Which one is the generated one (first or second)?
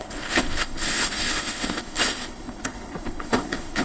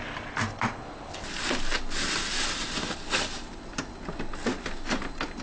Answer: first